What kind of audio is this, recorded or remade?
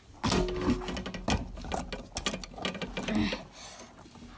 recorded